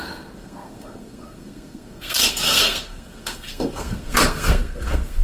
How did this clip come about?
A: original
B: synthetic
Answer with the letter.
B